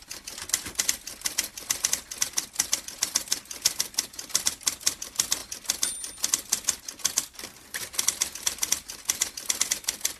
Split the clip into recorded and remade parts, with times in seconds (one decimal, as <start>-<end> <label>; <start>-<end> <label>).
0.0-10.2 recorded